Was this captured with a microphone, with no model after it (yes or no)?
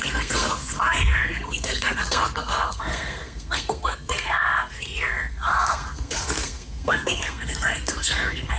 no